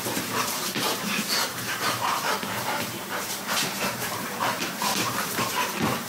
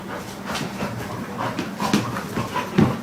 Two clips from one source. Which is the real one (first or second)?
second